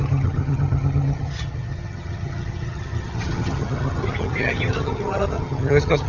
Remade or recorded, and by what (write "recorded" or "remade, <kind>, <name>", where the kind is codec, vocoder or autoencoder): remade, vocoder, HiFi-GAN